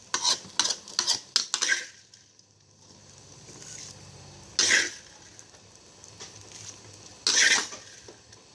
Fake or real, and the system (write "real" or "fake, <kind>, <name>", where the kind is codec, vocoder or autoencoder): real